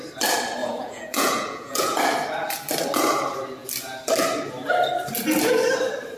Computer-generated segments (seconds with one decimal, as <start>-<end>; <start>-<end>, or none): 0.6-2.0